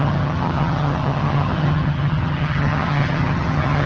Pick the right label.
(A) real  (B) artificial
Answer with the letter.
B